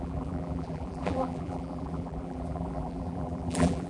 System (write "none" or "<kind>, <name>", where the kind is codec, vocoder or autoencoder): vocoder, BigVGAN v2